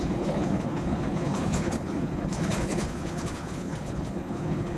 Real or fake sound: fake